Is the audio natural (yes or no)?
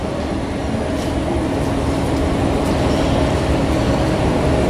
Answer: yes